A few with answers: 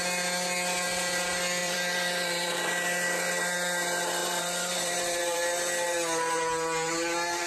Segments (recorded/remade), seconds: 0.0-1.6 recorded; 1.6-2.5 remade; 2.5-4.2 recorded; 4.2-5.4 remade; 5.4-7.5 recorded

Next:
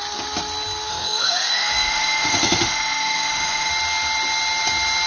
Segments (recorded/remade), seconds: 0.0-0.9 recorded; 0.9-3.7 remade; 3.7-5.1 recorded

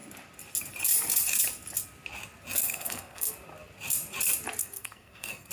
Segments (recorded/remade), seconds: 0.0-2.6 recorded; 2.6-3.3 remade; 3.3-4.6 recorded; 4.6-5.5 remade

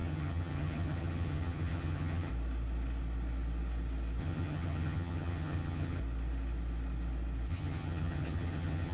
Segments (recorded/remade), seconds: 0.0-2.3 remade; 2.3-4.2 recorded; 4.2-6.0 remade; 6.0-7.5 recorded; 7.5-8.9 remade

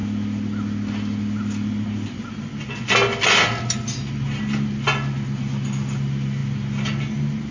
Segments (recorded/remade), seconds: 0.0-7.5 recorded